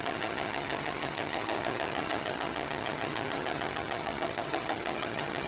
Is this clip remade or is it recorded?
remade